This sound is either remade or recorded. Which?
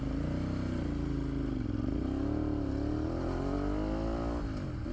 recorded